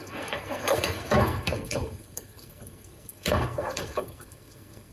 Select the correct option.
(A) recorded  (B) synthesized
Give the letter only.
B